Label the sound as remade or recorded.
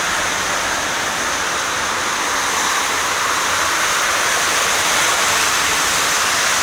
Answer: recorded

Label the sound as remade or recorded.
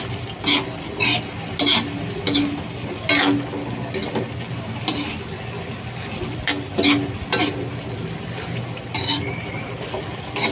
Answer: recorded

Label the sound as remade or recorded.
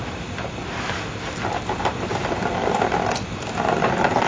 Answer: recorded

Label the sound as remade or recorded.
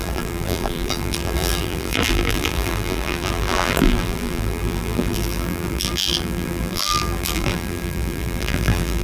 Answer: remade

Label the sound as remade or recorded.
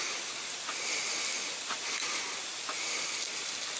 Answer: recorded